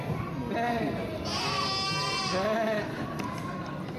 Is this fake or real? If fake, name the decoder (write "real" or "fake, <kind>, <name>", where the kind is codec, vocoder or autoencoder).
real